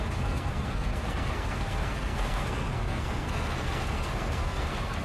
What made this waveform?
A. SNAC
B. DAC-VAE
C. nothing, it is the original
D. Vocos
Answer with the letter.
A